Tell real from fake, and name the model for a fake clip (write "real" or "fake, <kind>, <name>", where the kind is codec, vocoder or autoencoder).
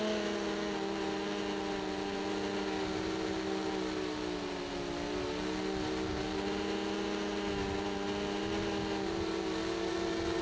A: real